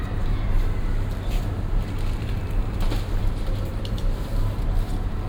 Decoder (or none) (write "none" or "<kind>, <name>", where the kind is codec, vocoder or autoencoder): vocoder, BigVGAN v2